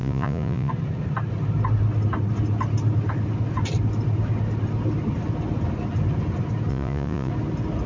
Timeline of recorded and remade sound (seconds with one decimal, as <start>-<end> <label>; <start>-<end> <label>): 0.0-0.7 remade; 0.7-6.7 recorded; 6.7-7.3 remade; 7.3-7.9 recorded